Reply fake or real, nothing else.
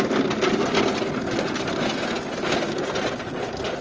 real